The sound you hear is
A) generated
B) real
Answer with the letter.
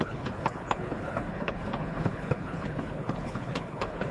A